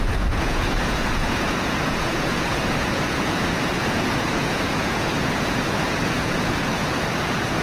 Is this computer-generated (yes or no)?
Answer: yes